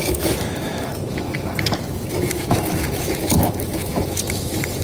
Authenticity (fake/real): fake